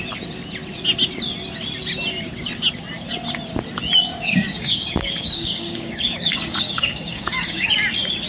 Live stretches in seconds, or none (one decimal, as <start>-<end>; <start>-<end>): 0.0-4.1; 7.7-8.3